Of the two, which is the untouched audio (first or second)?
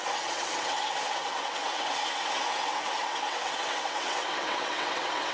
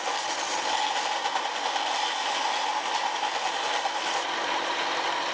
second